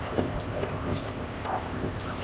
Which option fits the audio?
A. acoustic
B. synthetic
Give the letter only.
B